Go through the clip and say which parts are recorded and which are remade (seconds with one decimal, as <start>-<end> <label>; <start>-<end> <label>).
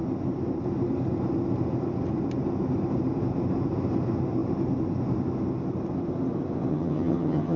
0.0-6.7 recorded; 6.7-7.6 remade